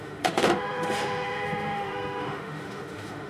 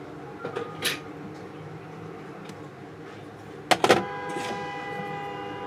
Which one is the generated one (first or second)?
first